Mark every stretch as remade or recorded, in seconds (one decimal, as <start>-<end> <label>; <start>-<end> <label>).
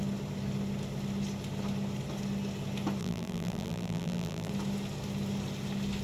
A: 0.0-3.0 recorded; 3.0-4.5 remade; 4.5-6.0 recorded